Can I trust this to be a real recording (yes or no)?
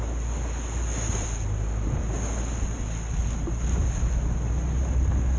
yes